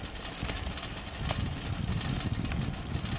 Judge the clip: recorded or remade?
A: recorded